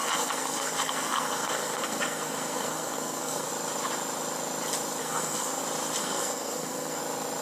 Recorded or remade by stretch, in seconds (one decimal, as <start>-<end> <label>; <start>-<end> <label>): 0.0-3.5 remade; 3.5-5.0 recorded; 5.0-5.6 remade; 5.6-6.0 recorded; 6.0-7.0 remade; 7.0-7.4 recorded